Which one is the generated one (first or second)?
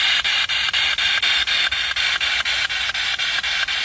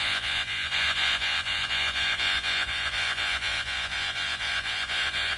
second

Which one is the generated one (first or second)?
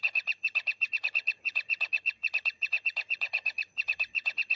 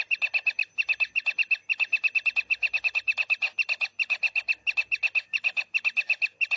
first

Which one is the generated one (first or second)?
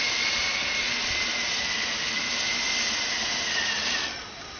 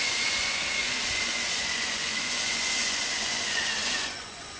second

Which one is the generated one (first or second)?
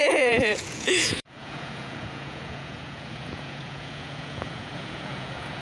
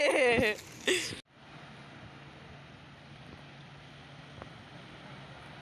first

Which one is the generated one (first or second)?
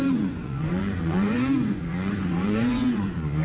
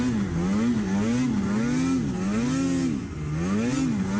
first